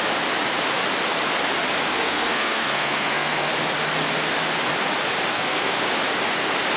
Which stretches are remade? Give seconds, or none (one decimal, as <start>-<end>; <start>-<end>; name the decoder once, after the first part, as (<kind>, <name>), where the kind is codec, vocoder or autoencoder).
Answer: 1.9-3.5 (codec, SNAC); 5.3-5.8